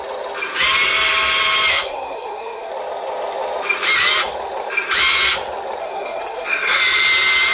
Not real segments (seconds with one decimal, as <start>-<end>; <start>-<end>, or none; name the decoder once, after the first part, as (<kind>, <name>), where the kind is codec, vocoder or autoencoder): 1.7-2.7 (codec, SNAC); 5.8-6.8